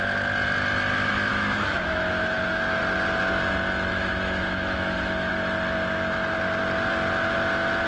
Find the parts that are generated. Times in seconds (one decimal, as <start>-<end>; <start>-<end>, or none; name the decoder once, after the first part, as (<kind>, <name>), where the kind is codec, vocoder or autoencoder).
1.3-2.8 (autoencoder, DAC-VAE); 3.9-5.3